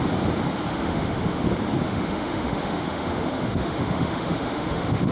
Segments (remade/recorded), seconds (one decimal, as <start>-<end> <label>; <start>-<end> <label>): 0.0-0.7 recorded; 0.7-1.5 remade; 1.5-1.9 recorded; 1.9-5.1 remade